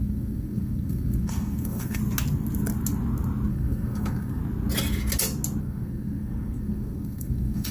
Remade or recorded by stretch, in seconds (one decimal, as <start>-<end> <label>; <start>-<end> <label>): 0.0-2.0 remade; 2.0-3.5 recorded; 3.5-4.4 remade; 4.4-5.6 recorded; 5.6-7.7 remade